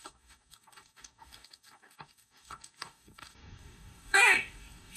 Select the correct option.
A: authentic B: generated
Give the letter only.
B